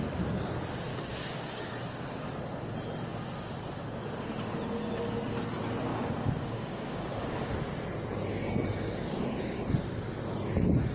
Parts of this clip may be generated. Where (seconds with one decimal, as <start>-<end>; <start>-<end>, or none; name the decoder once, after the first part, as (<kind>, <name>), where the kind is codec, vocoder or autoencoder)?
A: 0.9-1.7 (codec, DAC); 5.9-7.5